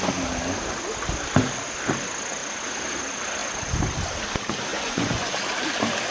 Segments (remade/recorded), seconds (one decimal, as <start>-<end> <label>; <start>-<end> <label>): 0.0-4.7 recorded; 4.7-5.3 remade; 5.3-6.1 recorded